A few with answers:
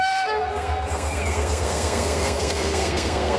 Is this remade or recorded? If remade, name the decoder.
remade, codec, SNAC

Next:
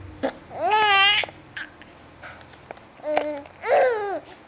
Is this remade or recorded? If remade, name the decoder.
recorded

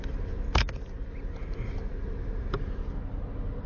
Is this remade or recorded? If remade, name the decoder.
recorded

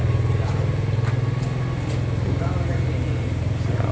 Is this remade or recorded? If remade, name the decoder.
recorded